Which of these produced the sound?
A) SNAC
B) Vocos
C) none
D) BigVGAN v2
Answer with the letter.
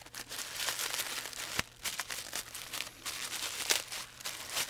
C